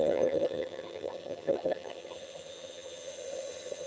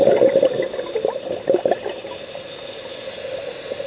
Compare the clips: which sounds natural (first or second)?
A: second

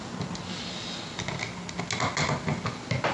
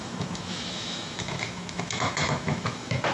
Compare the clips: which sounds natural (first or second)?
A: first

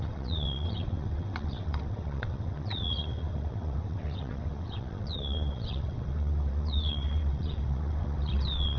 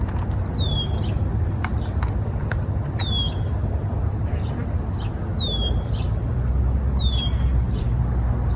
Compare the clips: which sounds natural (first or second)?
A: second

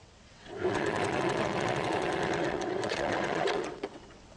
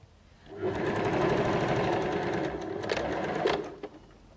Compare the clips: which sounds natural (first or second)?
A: second